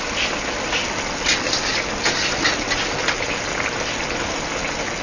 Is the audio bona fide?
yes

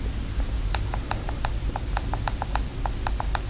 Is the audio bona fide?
yes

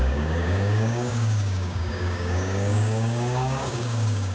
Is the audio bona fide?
no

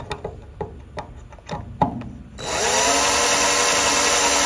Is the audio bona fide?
yes